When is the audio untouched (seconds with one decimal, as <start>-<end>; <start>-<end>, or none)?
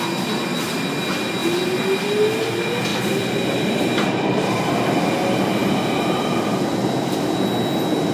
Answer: 0.0-2.9; 5.0-5.6; 6.7-8.1